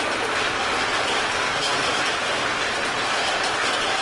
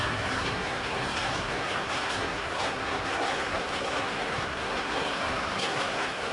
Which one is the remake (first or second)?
second